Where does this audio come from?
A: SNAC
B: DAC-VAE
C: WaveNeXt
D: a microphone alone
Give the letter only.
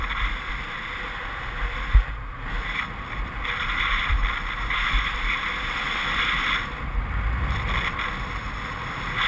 D